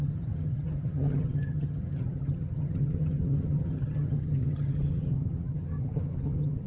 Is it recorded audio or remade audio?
remade